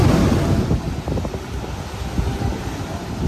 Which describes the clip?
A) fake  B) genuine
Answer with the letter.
B